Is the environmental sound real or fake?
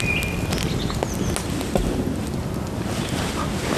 real